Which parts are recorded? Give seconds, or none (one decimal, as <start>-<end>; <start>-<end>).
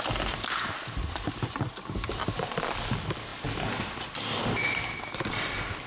0.0-5.9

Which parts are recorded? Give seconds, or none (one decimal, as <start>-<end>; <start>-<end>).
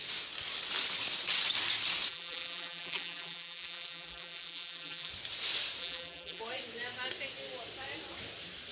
0.0-2.1; 5.1-5.8; 6.4-8.7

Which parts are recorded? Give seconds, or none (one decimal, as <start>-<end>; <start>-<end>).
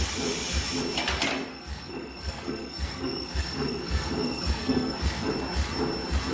0.0-1.5; 5.3-6.3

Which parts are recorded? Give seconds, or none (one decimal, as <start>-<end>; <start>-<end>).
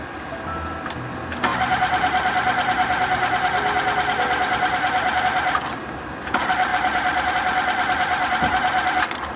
0.0-9.4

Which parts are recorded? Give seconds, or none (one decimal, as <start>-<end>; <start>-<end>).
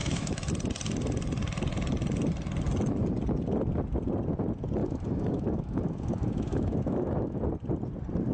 0.5-4.8; 7.4-8.3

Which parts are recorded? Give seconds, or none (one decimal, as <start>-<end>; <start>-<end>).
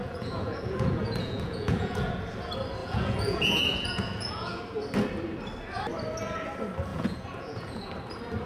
2.1-2.8; 4.6-6.9; 7.9-8.5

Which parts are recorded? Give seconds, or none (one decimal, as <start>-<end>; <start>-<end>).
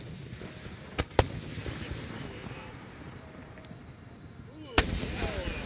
0.0-1.5; 4.9-5.7